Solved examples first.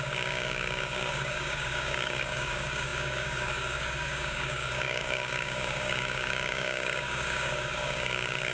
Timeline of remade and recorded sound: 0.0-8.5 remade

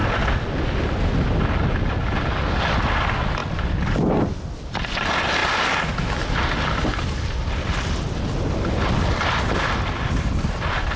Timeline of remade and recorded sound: 0.0-11.0 recorded

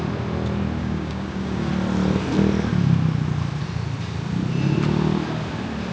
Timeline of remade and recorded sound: 0.0-0.8 recorded; 0.8-1.7 remade; 1.7-5.9 recorded